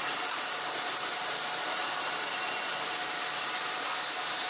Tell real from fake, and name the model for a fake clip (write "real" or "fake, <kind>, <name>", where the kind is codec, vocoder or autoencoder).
fake, vocoder, BigVGAN v2